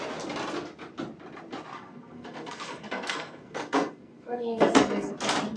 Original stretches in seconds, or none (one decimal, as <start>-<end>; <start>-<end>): 0.0-1.7; 5.1-5.6